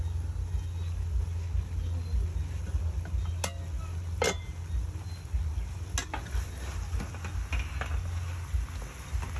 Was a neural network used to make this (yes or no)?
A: no